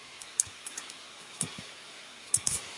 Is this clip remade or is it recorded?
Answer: remade